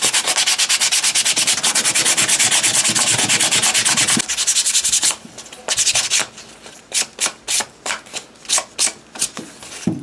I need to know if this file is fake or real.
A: real